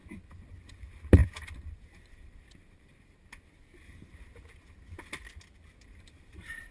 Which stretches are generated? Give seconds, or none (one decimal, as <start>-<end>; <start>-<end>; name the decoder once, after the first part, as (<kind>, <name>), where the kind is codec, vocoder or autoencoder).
0.6-4.3 (vocoder, BigVGAN v2); 5.8-6.7